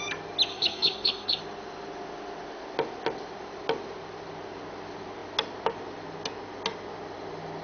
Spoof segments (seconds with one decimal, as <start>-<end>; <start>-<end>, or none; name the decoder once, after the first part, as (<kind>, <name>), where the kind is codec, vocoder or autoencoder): 0.5-1.4 (codec, SNAC)